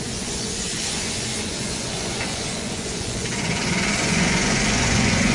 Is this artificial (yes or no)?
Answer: yes